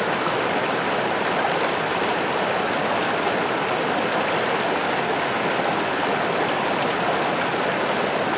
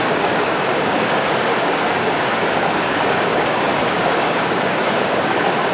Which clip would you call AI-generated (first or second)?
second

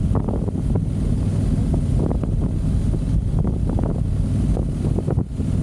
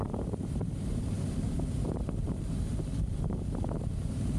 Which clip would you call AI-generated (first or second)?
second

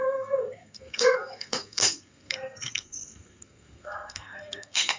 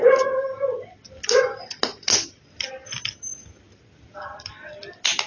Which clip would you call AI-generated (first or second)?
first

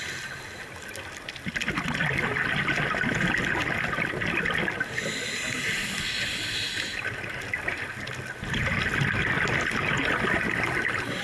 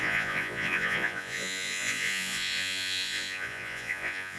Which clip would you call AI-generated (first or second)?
second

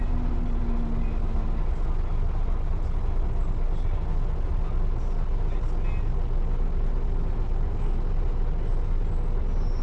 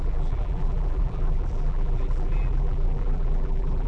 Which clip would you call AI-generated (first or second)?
second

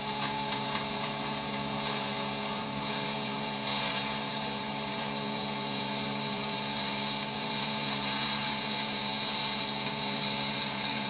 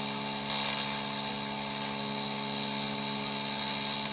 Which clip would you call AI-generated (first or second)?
first